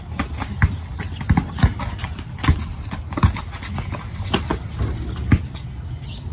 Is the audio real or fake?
real